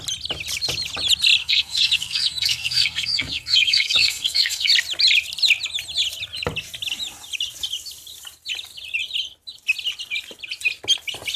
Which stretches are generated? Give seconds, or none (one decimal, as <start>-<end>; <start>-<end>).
1.4-4.7